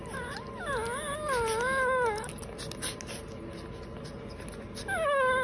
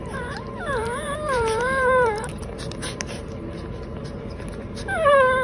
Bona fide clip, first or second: first